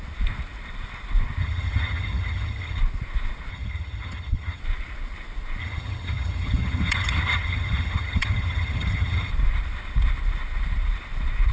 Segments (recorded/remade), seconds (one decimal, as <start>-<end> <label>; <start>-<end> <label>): 0.0-1.4 recorded; 1.4-2.8 remade; 2.8-3.5 recorded; 3.5-4.6 remade; 4.6-5.6 recorded; 5.6-9.3 remade; 9.3-11.5 recorded

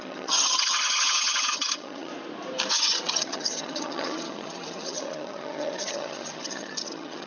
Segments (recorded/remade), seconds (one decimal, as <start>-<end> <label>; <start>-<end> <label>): 0.0-2.1 remade; 2.1-2.7 recorded; 2.7-7.3 remade

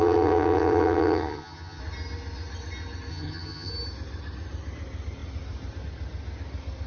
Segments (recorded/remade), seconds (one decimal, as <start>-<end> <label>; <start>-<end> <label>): 0.0-1.8 remade; 1.8-3.1 recorded; 3.1-3.7 remade; 3.7-6.9 recorded

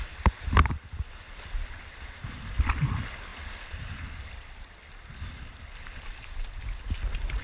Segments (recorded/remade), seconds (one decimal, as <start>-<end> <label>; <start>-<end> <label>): 0.0-7.4 recorded

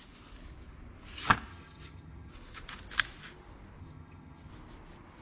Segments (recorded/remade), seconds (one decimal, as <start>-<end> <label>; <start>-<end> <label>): 0.0-1.5 recorded; 1.5-2.3 remade; 2.3-3.8 recorded; 3.8-4.5 remade; 4.5-5.2 recorded

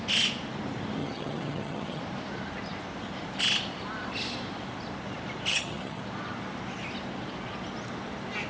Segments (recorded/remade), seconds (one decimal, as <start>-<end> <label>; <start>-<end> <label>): 0.0-1.0 recorded; 1.0-2.0 remade; 2.0-5.5 recorded; 5.5-6.0 remade; 6.0-8.5 recorded

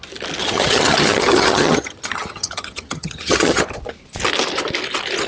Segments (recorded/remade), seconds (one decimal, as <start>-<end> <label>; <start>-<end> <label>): 0.0-0.4 recorded; 0.4-3.6 remade; 3.6-5.3 recorded